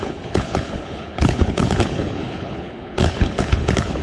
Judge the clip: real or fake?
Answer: fake